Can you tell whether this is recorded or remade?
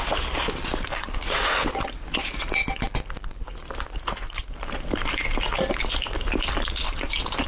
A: recorded